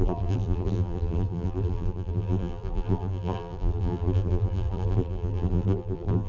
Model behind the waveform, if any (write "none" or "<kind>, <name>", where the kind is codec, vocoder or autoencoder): vocoder, BigVGAN v2